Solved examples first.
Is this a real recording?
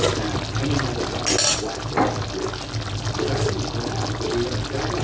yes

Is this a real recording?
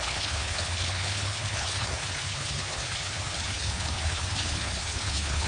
no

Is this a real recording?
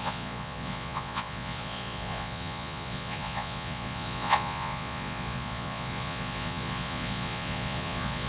no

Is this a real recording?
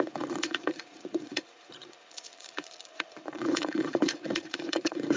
no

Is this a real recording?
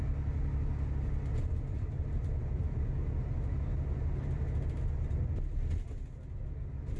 yes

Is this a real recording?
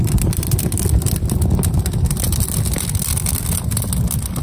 yes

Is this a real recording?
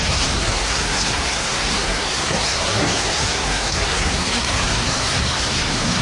no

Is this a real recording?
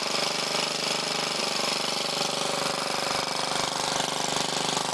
yes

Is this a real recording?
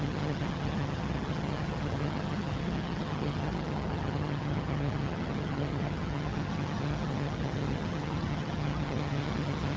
no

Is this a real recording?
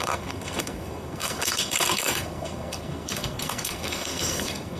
no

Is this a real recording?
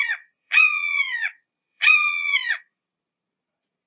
no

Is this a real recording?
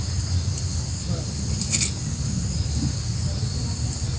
yes